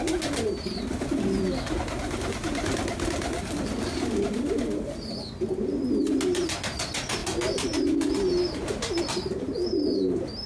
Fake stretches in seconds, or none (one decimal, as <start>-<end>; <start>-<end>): none